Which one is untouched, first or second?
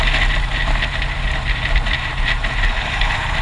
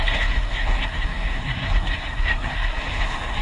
first